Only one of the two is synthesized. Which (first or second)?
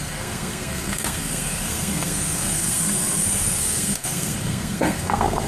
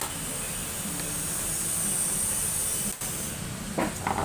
first